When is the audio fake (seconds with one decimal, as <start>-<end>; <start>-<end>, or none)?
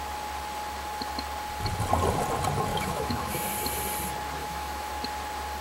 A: 2.7-3.5; 4.4-4.9